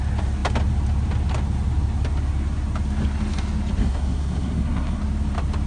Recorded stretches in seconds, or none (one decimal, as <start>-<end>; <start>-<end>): 0.0-3.8; 5.0-5.7